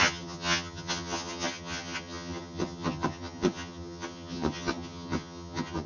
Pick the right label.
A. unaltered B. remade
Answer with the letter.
B